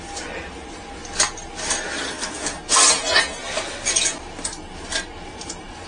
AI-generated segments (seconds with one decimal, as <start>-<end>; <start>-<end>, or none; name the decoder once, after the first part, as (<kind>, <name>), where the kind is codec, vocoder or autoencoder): 0.0-1.0 (vocoder, BigVGAN v2); 1.9-2.6; 5.3-5.9